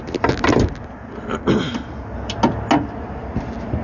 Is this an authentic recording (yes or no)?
yes